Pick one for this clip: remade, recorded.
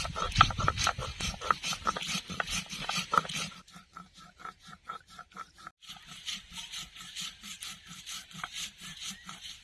remade